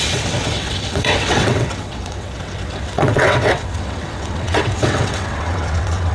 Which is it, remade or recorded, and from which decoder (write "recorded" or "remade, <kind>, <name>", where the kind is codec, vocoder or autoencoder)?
remade, vocoder, WaveNeXt